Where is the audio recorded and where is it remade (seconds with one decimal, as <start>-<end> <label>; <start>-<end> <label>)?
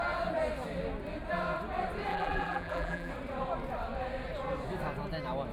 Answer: 0.0-2.1 recorded; 2.1-3.1 remade; 3.1-5.5 recorded